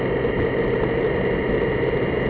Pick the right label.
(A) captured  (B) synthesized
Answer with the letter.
A